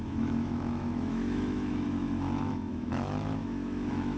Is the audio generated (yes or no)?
yes